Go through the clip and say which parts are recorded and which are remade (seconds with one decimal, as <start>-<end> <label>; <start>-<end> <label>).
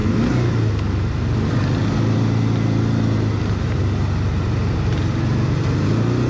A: 0.0-6.3 recorded